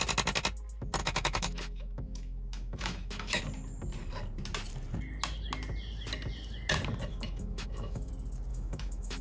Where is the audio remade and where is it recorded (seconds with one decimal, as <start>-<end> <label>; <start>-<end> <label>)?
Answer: 0.0-1.0 recorded; 1.0-3.4 remade; 3.4-7.1 recorded; 7.1-8.1 remade; 8.1-8.5 recorded; 8.5-9.2 remade

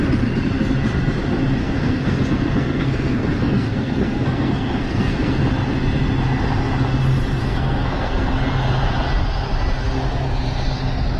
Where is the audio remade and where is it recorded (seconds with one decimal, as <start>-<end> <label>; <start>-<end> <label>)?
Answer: 0.0-1.6 recorded; 1.6-5.4 remade; 5.4-7.4 recorded; 7.4-8.3 remade; 8.3-11.2 recorded